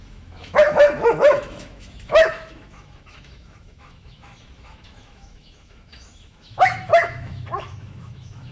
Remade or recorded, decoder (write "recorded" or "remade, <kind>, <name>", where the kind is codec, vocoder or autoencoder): remade, autoencoder, DAC-VAE